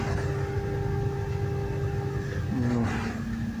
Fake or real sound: real